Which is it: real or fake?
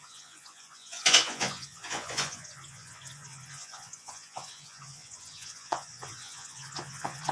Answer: fake